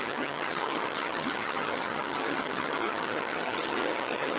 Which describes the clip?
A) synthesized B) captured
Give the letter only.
A